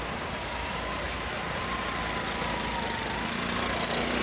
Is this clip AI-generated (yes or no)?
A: no